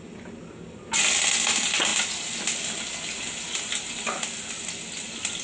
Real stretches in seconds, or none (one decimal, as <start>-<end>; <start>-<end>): 0.0-5.4

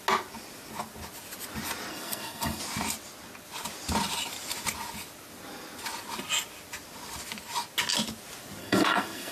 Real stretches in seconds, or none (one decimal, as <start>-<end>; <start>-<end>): 0.0-1.9; 2.6-8.6

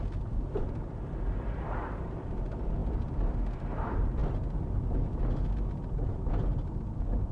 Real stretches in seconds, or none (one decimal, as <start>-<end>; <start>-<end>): 4.2-7.3

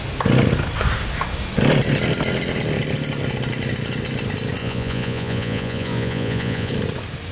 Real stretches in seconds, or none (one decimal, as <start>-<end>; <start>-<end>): 0.0-4.6; 6.7-7.3

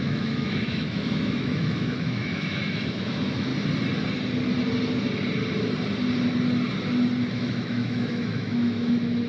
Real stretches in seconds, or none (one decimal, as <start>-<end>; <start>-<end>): 3.5-7.3

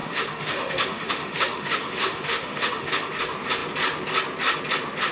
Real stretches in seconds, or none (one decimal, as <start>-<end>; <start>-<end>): 3.1-5.1

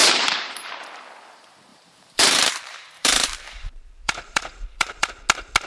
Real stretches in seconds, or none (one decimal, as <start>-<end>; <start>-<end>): 0.9-1.7; 5.1-5.7